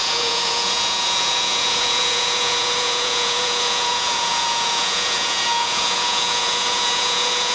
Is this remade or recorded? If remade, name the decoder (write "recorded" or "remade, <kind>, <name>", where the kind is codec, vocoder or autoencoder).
remade, vocoder, Vocos